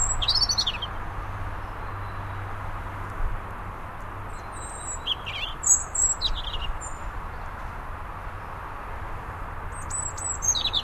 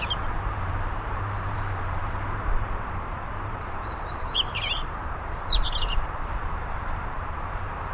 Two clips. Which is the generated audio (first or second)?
second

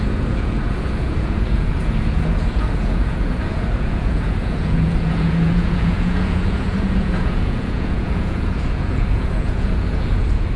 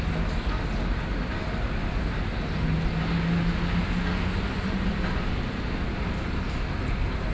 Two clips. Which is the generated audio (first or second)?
first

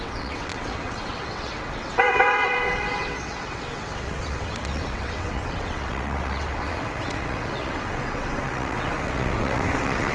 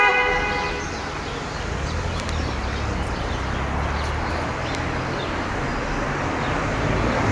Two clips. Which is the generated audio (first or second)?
first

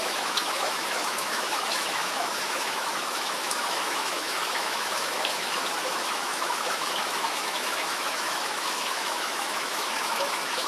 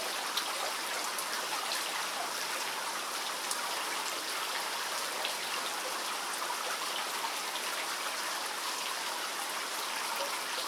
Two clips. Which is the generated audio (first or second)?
first